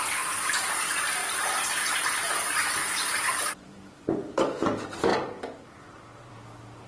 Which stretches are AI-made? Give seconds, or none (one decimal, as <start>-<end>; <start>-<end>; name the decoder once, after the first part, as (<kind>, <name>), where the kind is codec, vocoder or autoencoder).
3.7-4.3 (vocoder, BigVGAN v2); 5.1-6.3